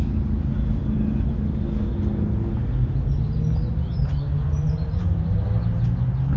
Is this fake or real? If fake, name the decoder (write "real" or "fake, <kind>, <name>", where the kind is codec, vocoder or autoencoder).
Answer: real